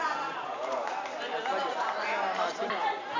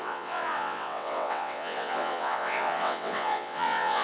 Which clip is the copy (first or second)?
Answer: second